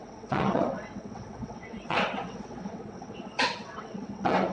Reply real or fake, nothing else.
fake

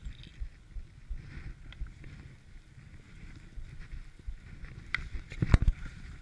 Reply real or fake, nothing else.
real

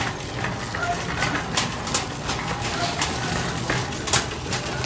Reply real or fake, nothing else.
real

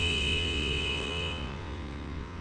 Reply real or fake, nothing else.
fake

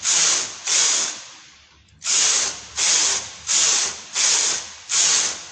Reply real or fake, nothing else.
real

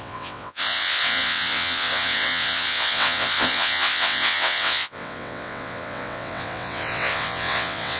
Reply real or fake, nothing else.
fake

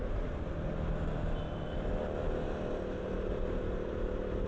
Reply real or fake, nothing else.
real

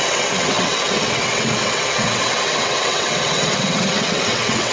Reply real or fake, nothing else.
fake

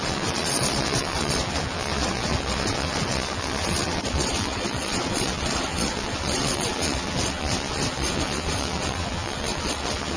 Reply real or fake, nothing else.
fake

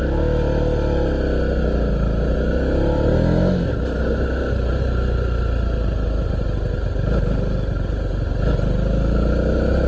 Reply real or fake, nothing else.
real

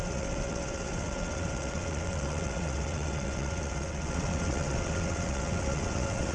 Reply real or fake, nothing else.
fake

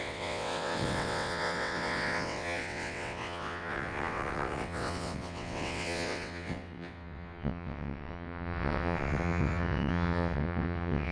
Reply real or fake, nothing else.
fake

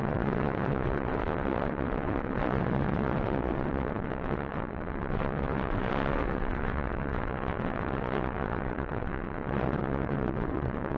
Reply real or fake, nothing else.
fake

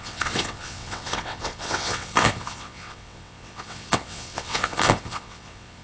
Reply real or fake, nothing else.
fake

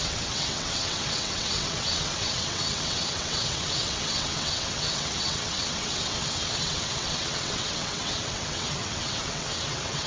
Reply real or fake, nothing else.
fake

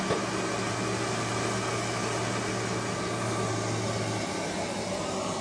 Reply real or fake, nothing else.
real